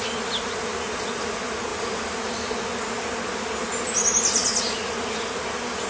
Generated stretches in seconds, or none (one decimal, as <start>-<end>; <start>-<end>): none